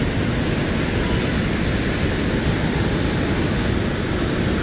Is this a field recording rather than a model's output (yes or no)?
yes